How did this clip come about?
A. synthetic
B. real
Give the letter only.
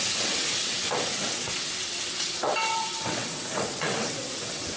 A